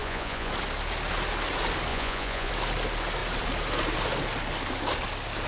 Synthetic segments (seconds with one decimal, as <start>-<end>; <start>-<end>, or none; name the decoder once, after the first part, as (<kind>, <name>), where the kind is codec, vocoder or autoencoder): 0.0-0.5 (vocoder, Vocos); 1.9-2.5